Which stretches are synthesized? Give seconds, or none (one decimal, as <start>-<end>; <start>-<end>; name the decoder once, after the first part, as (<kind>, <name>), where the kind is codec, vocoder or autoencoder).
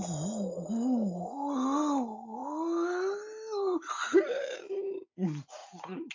5.6-6.1 (vocoder, Vocos)